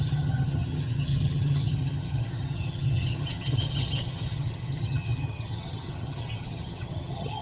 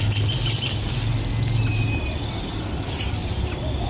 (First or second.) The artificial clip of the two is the first